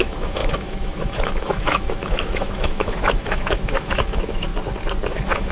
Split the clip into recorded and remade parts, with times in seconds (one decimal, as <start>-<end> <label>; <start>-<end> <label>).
0.0-4.5 remade; 4.5-5.1 recorded; 5.1-5.5 remade